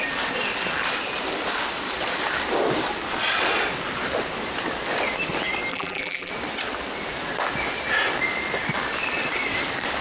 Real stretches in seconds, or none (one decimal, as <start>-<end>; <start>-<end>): 0.0-5.7; 6.3-10.0